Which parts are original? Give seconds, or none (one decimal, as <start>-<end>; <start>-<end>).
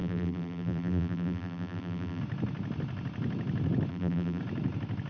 2.2-3.9; 4.4-5.1